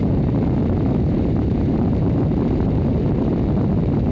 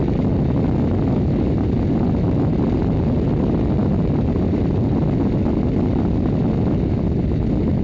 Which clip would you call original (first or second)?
second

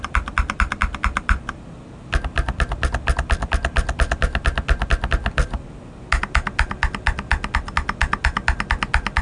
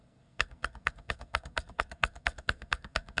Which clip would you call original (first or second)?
first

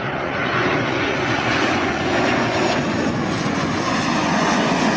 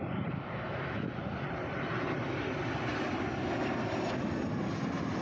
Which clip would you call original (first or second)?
second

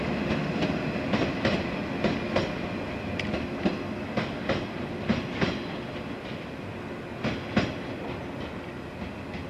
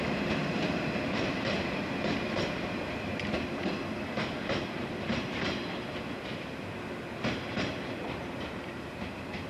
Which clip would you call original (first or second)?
first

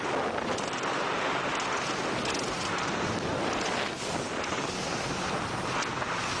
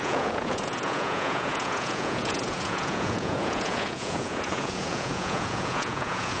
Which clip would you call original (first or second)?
first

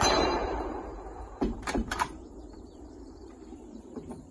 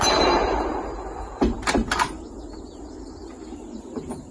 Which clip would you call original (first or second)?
second